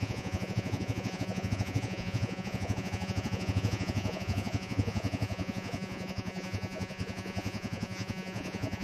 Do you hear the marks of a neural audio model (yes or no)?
yes